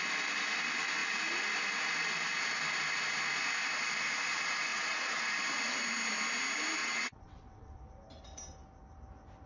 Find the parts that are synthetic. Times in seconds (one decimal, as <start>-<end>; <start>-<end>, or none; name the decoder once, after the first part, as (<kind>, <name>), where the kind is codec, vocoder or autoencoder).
4.7-5.3 (vocoder, WaveNeXt); 6.8-7.8